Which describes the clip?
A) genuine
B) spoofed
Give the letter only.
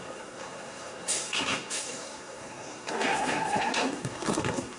B